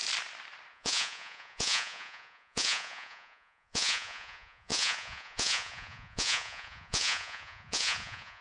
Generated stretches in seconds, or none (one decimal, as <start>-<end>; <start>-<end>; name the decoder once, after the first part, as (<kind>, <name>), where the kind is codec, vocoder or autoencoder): 0.7-8.4 (vocoder, Vocos)